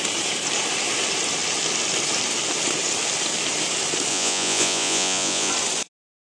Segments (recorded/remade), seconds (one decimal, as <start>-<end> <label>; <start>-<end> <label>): 0.0-4.1 recorded; 4.1-5.5 remade; 5.5-6.3 recorded